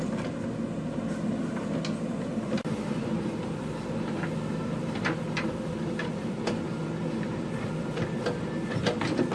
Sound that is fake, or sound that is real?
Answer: real